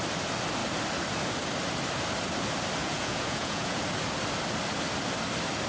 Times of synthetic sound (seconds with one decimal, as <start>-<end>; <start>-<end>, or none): 2.8-3.8